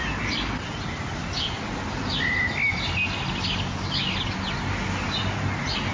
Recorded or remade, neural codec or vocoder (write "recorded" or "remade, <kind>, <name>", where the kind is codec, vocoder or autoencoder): recorded